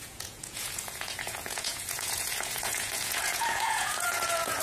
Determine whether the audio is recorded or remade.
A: remade